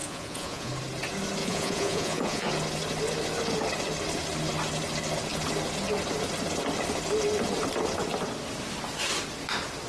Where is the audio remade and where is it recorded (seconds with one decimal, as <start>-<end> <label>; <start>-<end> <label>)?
0.0-0.7 remade; 0.7-1.4 recorded; 1.4-2.5 remade; 2.5-9.9 recorded